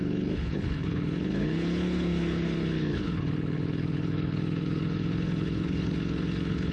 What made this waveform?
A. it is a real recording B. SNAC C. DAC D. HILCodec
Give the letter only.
D